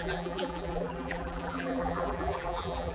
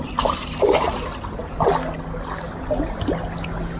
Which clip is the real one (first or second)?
second